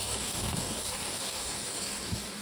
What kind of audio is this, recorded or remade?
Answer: remade